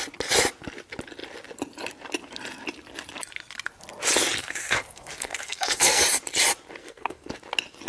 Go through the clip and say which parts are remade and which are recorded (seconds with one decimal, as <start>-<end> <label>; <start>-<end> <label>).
0.0-4.4 recorded; 4.4-6.0 remade; 6.0-6.8 recorded; 6.8-7.3 remade; 7.3-7.9 recorded